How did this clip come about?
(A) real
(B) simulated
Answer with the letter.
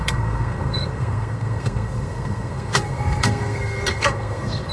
B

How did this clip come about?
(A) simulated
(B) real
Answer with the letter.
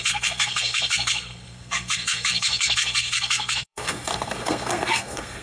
A